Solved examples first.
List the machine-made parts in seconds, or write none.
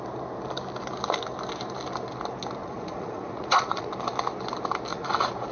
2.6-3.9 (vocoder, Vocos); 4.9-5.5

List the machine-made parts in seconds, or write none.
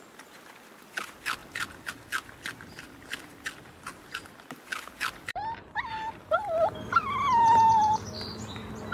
1.4-2.0 (vocoder, BigVGAN v2); 4.7-5.9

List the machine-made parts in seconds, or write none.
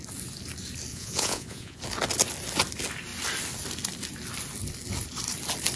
0.9-1.8 (vocoder, Vocos)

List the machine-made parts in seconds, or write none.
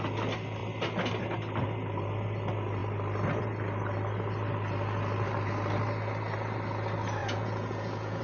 7.2-8.2 (vocoder, Vocos)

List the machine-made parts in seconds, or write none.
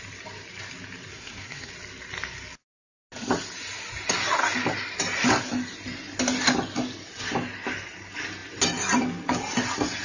1.1-1.7 (codec, SNAC)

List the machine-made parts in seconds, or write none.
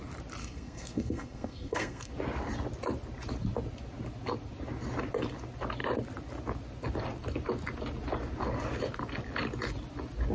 0.4-2.1 (codec, SNAC)